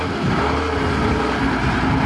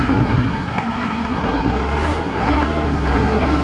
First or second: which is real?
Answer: first